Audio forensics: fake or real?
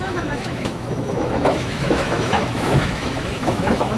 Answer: fake